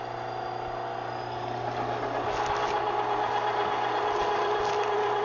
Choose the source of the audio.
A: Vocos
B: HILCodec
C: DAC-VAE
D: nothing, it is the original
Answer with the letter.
D